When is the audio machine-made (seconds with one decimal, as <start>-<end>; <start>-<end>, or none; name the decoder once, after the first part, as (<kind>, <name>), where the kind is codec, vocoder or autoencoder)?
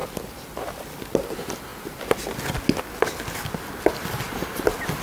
none